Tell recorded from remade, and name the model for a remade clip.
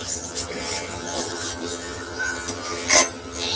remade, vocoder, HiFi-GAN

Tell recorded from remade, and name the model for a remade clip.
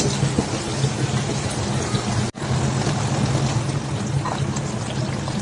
recorded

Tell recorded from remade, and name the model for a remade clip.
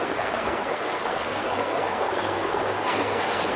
remade, codec, SNAC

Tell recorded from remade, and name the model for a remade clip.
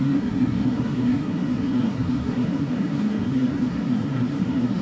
remade, codec, SNAC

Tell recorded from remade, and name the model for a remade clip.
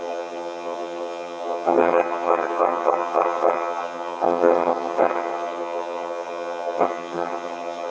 remade, vocoder, HiFi-GAN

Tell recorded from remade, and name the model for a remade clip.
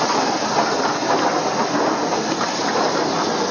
recorded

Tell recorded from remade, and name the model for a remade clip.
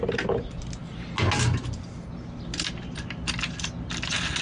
recorded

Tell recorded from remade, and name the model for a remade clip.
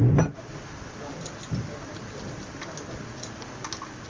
recorded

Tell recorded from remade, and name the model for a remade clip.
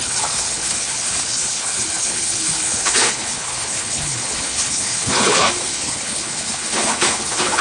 remade, codec, HILCodec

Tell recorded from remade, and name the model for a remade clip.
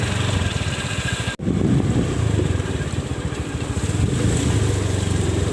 recorded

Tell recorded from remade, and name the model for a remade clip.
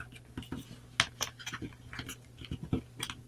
recorded